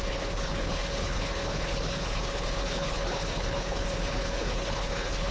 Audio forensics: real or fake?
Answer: fake